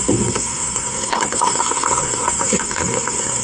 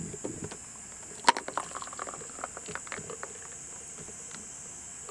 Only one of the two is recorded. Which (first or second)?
second